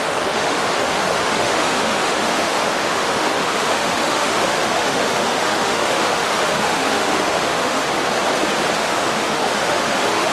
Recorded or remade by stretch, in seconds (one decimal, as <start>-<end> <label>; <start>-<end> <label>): 0.0-7.8 remade; 7.8-8.8 recorded; 8.8-10.3 remade